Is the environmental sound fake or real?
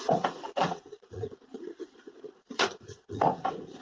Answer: fake